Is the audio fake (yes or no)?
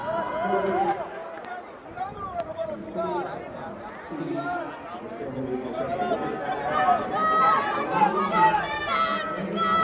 no